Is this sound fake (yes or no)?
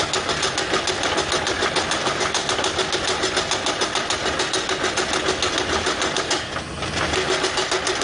no